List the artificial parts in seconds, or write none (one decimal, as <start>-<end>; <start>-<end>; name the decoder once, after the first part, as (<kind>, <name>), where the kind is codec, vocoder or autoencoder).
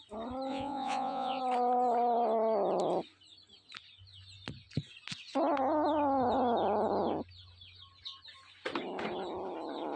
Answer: 0.5-1.4 (vocoder, Vocos)